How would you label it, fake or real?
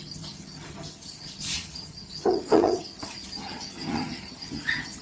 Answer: fake